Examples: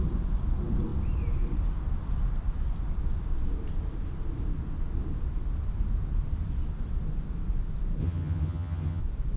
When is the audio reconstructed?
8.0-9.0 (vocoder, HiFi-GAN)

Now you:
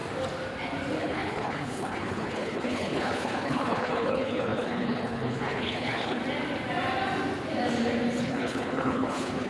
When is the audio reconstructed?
1.0-6.2 (codec, HILCodec); 8.2-9.5

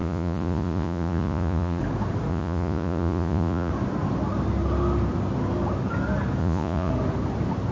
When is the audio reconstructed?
0.0-1.8 (vocoder, Vocos); 2.3-3.7; 6.4-6.9

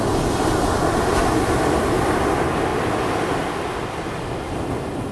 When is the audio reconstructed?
none

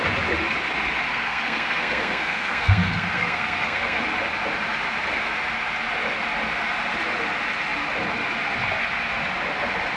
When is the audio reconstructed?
1.1-4.0 (codec, SNAC)